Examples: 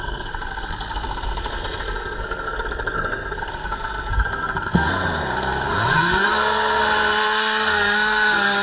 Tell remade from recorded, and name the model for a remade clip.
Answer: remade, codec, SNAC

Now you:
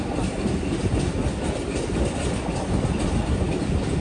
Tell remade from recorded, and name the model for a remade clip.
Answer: recorded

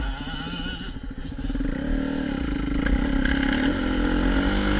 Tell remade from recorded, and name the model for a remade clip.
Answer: recorded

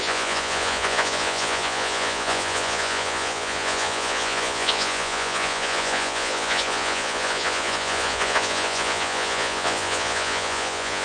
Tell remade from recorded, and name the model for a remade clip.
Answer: remade, vocoder, Vocos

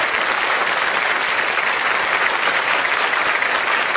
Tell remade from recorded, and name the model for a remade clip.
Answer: recorded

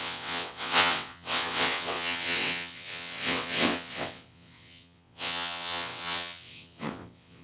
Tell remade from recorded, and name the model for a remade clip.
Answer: remade, vocoder, WaveNeXt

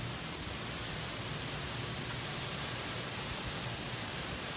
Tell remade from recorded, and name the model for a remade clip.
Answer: recorded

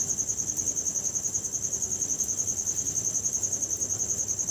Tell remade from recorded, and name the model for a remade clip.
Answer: recorded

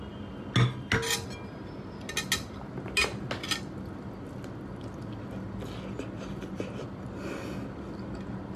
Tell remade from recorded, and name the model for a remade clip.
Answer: recorded